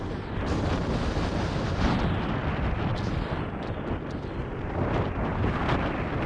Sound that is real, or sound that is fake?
real